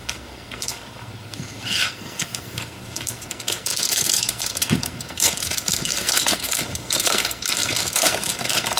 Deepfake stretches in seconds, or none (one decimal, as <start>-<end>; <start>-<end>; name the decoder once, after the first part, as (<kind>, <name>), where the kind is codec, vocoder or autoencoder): 0.0-8.8 (codec, SNAC)